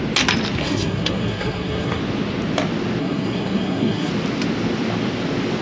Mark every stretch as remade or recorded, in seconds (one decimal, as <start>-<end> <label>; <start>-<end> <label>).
0.0-0.6 recorded; 0.6-2.0 remade; 2.0-3.0 recorded; 3.0-4.1 remade; 4.1-5.6 recorded